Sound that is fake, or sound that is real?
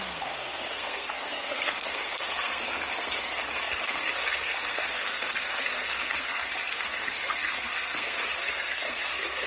fake